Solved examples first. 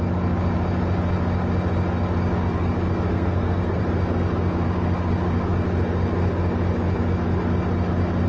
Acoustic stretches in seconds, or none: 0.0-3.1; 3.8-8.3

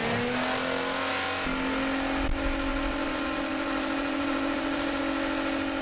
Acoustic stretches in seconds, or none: 0.0-2.7; 5.0-5.8

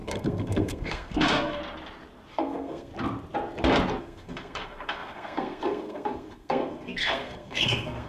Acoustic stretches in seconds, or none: 1.6-2.3; 2.9-4.0

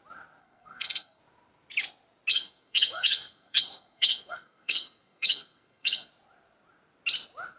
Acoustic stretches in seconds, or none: 0.0-0.4; 1.2-2.3; 6.1-7.6

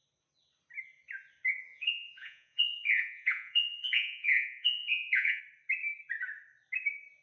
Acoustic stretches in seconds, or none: 0.0-1.7; 5.4-7.2